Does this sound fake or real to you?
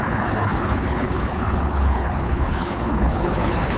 fake